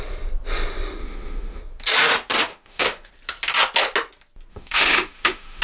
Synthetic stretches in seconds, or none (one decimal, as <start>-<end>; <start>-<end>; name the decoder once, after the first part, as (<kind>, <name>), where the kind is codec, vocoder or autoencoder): 1.0-1.6 (autoencoder, DAC-VAE); 2.5-3.1; 4.5-5.6